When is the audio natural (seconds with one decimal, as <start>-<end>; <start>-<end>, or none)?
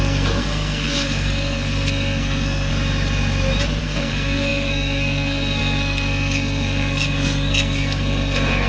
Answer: 2.7-3.8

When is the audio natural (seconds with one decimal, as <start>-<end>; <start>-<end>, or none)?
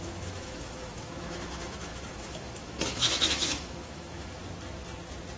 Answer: 4.4-5.4